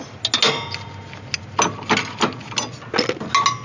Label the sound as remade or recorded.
recorded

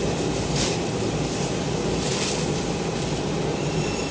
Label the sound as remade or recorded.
recorded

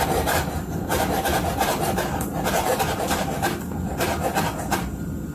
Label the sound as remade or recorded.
remade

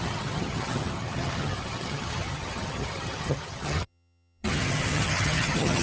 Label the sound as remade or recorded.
remade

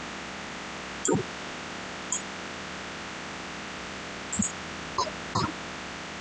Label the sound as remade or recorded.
recorded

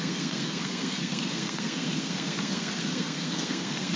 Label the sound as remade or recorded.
remade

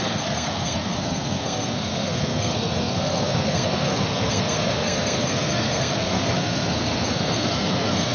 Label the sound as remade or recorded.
remade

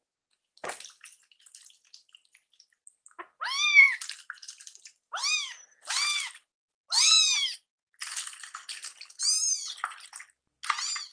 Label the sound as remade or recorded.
recorded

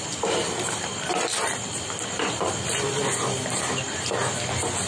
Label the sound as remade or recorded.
recorded